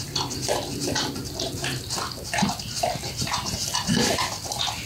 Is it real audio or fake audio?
real